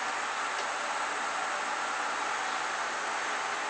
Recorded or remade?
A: recorded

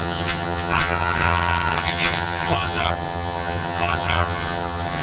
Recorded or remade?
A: remade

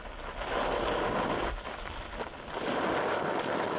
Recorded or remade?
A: recorded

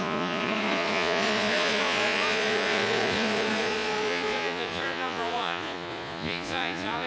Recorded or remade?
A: remade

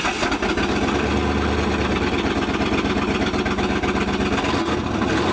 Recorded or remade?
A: recorded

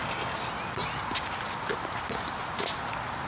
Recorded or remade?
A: recorded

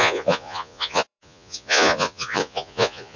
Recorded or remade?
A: remade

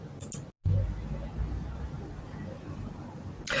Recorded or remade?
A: recorded